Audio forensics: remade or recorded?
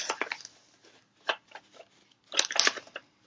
recorded